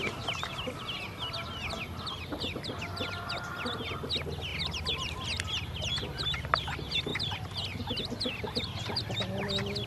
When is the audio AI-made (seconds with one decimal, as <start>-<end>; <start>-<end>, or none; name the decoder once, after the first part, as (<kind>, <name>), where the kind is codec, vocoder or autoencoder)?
2.3-3.0 (vocoder, BigVGAN v2); 4.5-6.6; 7.1-9.0